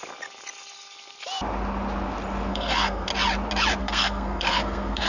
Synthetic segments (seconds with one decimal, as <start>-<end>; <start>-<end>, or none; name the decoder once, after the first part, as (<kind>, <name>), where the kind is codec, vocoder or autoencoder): 2.5-3.1 (codec, SNAC); 3.8-5.1